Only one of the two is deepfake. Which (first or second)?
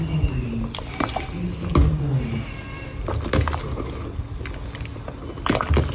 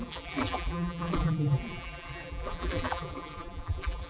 second